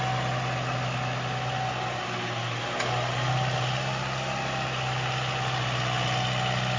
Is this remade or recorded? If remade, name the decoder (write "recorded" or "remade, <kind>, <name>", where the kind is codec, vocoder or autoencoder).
recorded